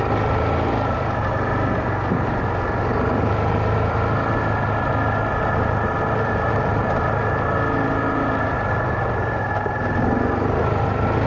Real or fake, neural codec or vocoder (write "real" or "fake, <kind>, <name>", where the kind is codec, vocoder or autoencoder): real